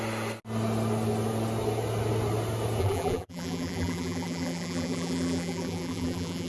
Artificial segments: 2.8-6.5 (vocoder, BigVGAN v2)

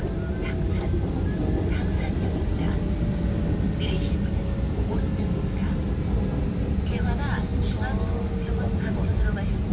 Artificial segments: none

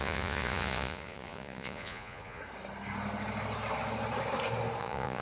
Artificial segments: 0.0-2.4 (vocoder, Vocos); 4.8-5.2

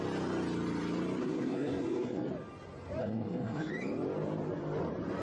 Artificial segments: 1.2-2.3 (codec, SNAC); 3.0-3.7

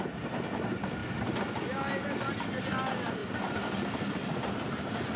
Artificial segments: none